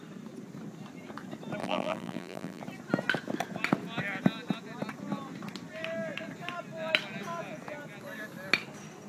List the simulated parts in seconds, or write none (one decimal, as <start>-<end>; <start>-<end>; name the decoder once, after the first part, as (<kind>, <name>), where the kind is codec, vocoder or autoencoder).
1.6-2.6 (vocoder, BigVGAN v2)